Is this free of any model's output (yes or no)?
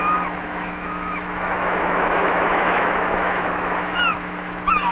no